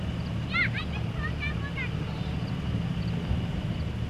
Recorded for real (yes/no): yes